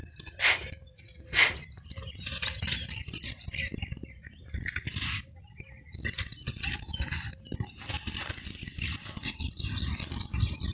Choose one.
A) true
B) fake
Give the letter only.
A